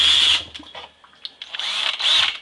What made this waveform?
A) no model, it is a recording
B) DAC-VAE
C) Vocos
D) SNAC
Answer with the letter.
A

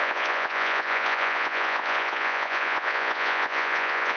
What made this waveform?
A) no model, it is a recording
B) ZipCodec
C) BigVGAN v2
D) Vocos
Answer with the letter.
D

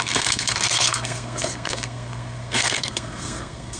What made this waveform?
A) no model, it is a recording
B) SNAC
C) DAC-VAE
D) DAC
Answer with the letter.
B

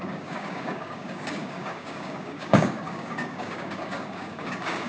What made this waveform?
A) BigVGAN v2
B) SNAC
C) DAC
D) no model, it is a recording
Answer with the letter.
C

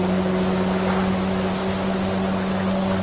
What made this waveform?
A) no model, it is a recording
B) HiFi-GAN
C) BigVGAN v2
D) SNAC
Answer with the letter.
A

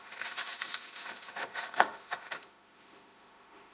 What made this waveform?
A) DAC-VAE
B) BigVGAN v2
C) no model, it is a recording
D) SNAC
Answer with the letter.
A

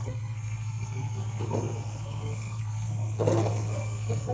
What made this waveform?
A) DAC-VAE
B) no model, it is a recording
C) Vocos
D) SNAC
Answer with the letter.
D